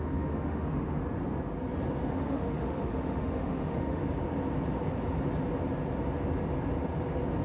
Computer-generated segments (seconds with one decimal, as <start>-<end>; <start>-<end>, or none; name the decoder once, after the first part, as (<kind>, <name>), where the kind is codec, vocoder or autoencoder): 0.0-1.0 (autoencoder, DAC-VAE); 2.1-4.0